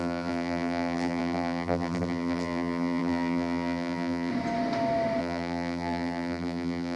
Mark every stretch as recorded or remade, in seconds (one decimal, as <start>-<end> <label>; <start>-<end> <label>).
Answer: 0.0-4.3 remade; 4.3-5.2 recorded; 5.2-7.0 remade